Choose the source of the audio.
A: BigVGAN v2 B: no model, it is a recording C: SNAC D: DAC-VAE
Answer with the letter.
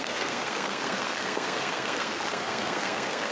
C